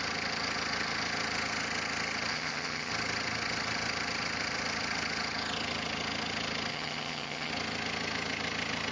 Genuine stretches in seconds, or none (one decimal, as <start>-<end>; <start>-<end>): 0.0-2.3; 2.9-6.7; 7.5-8.9

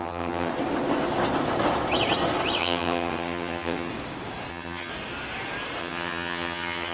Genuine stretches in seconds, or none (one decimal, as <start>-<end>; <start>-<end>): 0.5-2.6; 3.9-4.5; 4.9-5.8

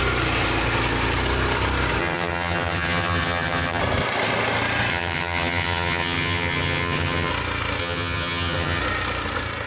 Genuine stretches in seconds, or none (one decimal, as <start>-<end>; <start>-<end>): 0.0-2.0; 3.8-4.9; 7.3-7.8; 8.8-9.7

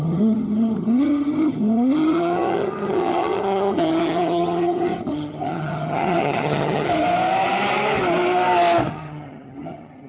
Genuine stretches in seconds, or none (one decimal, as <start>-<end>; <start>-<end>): 6.9-8.9

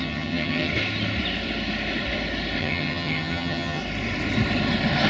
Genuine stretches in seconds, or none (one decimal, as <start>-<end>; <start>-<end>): 0.7-2.6; 3.8-5.1